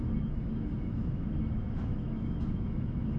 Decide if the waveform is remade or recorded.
remade